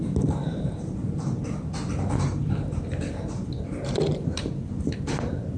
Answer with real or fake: fake